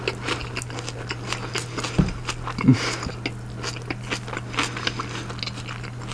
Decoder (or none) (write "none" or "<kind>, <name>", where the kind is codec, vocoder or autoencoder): none